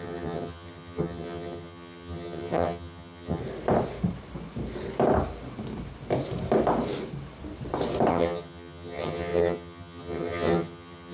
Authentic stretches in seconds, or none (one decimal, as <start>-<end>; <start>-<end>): 3.4-8.1